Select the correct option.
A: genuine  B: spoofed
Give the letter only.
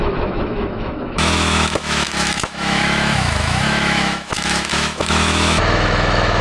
B